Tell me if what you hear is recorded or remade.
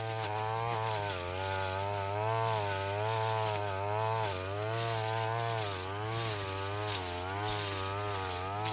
recorded